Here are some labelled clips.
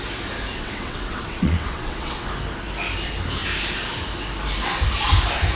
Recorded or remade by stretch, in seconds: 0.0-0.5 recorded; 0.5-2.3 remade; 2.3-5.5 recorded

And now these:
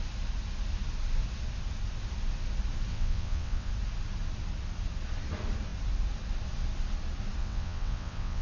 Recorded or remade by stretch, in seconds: 0.0-2.9 recorded; 2.9-3.7 remade; 3.7-7.4 recorded; 7.4-8.4 remade

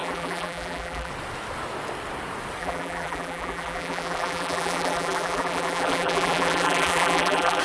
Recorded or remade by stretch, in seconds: 0.0-1.1 remade; 1.1-2.6 recorded; 2.6-7.6 remade